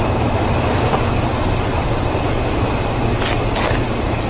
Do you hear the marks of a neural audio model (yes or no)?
no